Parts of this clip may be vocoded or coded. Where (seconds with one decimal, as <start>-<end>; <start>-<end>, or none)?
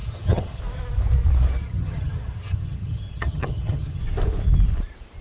0.0-0.6; 1.6-4.0